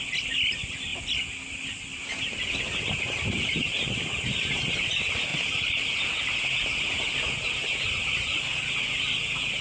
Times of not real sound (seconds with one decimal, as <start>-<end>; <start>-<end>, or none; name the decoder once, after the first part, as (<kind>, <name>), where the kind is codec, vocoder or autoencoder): none